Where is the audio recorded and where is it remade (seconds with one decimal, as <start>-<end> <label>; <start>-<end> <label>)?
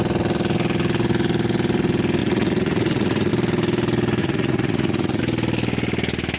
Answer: 0.0-2.2 recorded; 2.2-3.3 remade; 3.3-4.2 recorded; 4.2-5.2 remade; 5.2-6.4 recorded